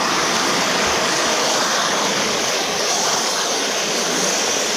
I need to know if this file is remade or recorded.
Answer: remade